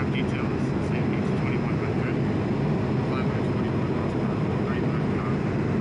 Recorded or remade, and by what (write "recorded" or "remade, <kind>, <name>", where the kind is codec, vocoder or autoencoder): recorded